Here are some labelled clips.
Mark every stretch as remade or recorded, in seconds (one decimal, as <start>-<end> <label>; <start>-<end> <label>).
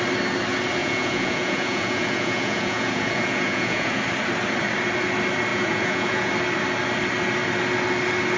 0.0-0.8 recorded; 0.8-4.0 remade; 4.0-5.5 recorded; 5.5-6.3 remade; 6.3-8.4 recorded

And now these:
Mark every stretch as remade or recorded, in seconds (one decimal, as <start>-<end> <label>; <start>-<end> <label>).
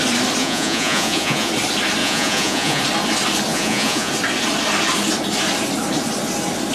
0.0-0.4 recorded; 0.4-1.5 remade; 1.5-2.0 recorded; 2.0-2.8 remade; 2.8-3.5 recorded; 3.5-4.1 remade; 4.1-6.7 recorded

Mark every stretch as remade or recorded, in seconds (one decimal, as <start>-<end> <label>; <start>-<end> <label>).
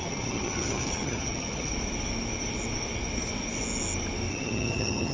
0.0-1.7 remade; 1.7-4.3 recorded; 4.3-5.1 remade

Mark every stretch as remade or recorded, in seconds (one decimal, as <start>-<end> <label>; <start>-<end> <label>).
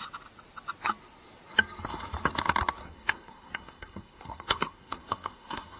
0.0-2.8 recorded; 2.8-5.8 remade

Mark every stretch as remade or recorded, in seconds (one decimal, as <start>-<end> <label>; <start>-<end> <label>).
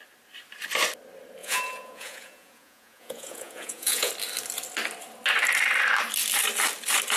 0.0-1.4 recorded; 1.4-4.1 remade; 4.1-7.2 recorded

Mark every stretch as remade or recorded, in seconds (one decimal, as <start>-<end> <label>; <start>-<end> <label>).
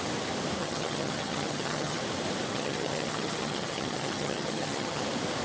0.0-0.6 recorded; 0.6-2.0 remade; 2.0-2.5 recorded; 2.5-5.0 remade; 5.0-5.4 recorded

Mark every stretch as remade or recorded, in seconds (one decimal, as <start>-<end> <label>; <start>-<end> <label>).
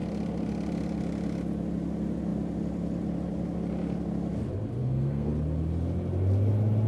0.0-4.8 recorded; 4.8-5.3 remade; 5.3-6.9 recorded